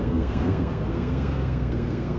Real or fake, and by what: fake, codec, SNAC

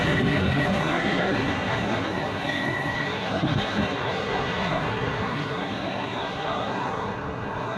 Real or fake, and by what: fake, codec, SNAC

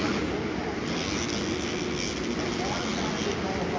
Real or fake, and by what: real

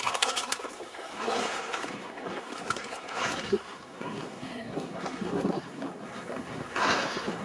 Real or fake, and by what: fake, codec, SNAC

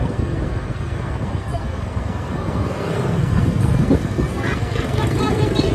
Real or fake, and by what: fake, codec, SNAC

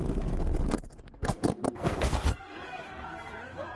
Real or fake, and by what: fake, codec, SNAC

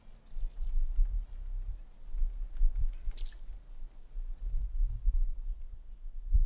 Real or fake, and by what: real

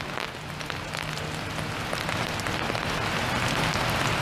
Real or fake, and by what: real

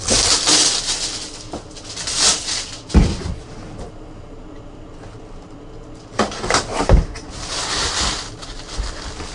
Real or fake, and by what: real